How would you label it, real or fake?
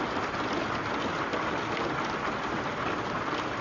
real